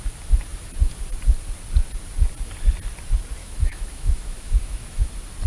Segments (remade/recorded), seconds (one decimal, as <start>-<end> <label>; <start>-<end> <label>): 0.0-3.4 recorded; 3.4-5.1 remade; 5.1-5.5 recorded